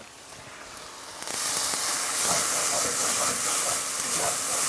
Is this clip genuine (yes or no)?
yes